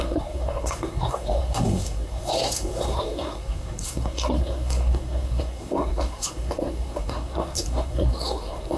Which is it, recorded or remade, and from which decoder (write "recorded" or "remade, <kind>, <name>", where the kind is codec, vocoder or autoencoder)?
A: remade, codec, SNAC